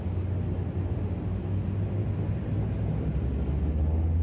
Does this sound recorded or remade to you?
recorded